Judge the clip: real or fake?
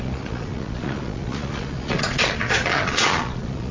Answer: fake